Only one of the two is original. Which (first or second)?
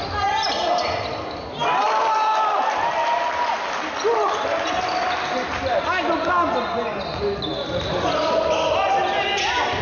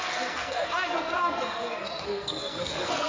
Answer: first